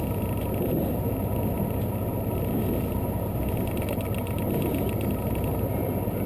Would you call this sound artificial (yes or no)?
no